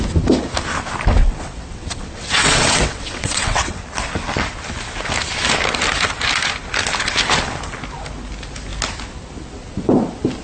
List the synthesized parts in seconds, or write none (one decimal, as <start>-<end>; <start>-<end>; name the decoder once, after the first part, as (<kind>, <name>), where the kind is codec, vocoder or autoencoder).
1.2-3.8 (vocoder, WaveNeXt)